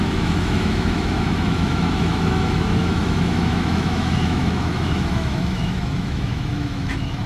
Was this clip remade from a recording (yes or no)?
yes